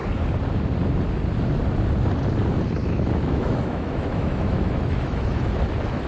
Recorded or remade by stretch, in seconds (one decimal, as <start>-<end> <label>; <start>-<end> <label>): 0.0-2.8 recorded; 2.8-5.6 remade; 5.6-6.1 recorded